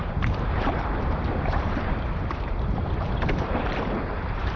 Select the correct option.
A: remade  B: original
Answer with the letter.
A